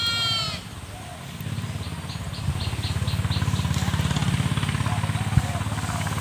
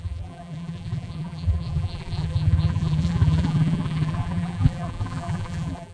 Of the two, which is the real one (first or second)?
first